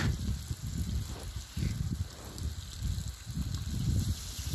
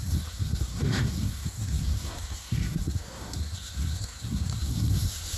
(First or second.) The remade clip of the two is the second